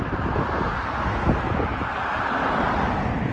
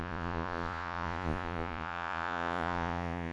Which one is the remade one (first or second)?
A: second